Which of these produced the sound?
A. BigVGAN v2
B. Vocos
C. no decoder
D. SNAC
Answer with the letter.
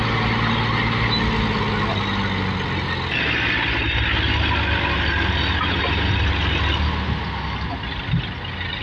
C